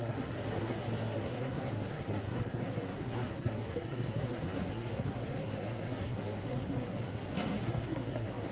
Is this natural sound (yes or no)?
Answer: no